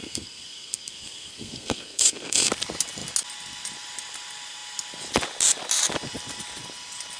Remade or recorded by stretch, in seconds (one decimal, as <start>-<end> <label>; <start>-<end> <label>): 0.0-2.5 remade; 2.5-7.2 recorded